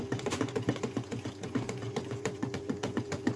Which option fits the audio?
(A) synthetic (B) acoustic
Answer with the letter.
A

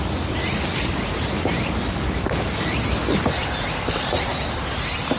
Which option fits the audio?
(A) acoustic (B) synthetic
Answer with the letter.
A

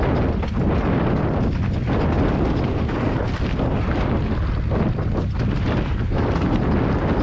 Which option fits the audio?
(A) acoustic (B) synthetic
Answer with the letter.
A